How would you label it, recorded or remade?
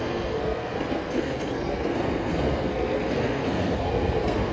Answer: remade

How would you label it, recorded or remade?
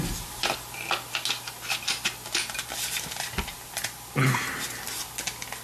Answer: recorded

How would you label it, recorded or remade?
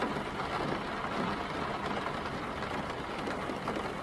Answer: recorded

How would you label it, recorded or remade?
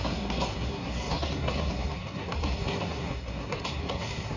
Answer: remade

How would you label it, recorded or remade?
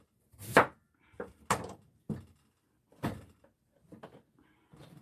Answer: recorded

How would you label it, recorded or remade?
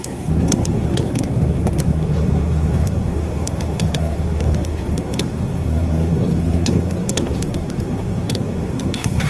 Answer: remade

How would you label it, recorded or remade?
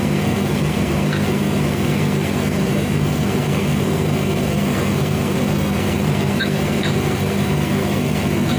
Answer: remade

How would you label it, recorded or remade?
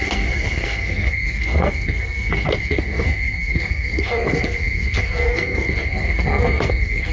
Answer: remade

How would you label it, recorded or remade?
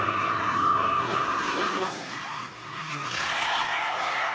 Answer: remade